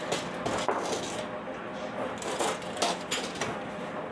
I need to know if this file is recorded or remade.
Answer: recorded